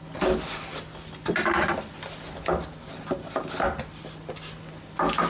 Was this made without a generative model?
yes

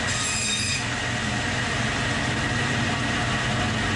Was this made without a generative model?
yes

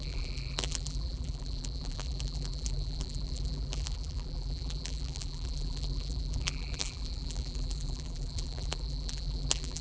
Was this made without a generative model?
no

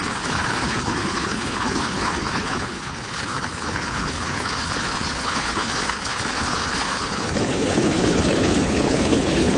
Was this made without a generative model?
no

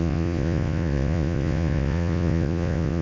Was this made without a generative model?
no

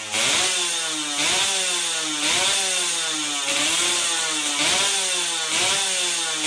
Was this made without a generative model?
yes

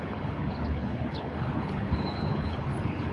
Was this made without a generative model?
no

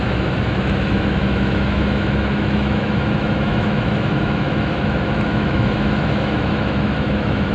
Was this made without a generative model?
no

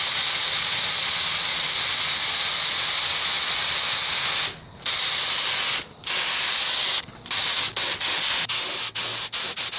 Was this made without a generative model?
yes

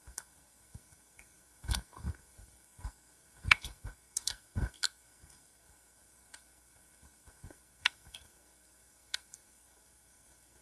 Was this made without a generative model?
no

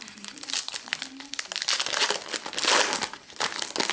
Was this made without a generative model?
yes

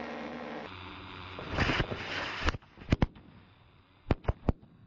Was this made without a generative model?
yes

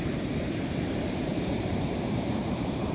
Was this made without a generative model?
no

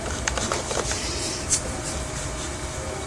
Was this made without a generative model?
no